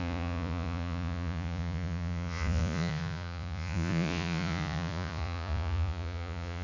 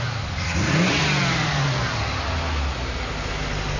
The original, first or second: second